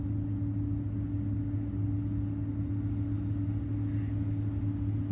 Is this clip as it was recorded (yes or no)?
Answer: yes